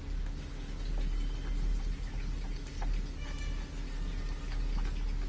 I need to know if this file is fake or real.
real